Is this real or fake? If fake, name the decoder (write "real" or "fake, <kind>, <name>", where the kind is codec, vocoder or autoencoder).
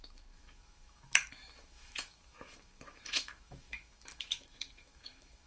fake, autoencoder, DAC-VAE